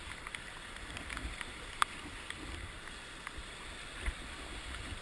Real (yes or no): yes